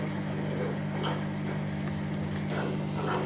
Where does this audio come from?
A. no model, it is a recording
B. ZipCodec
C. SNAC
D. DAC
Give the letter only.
A